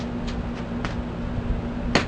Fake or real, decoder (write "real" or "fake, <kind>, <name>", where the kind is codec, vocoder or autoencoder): real